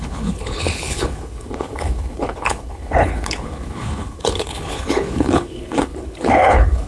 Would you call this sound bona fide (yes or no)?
no